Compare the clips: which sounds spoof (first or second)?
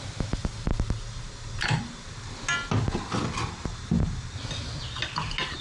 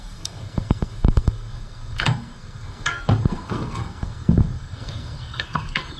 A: second